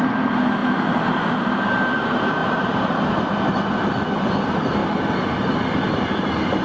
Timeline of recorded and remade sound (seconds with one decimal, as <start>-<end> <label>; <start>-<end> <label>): 0.0-0.6 recorded; 0.6-1.4 remade; 1.4-2.4 recorded; 2.4-3.1 remade; 3.1-6.6 recorded